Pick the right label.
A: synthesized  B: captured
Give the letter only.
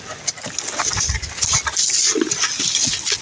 B